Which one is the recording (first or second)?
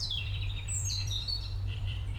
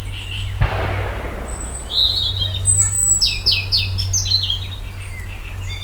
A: second